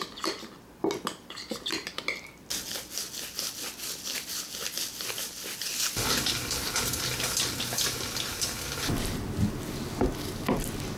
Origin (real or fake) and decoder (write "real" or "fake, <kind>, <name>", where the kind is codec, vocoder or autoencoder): real